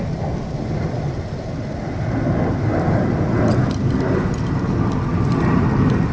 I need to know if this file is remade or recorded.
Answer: recorded